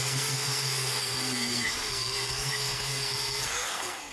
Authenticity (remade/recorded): remade